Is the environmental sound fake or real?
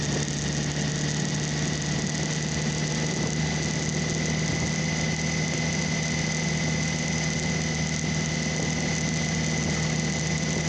real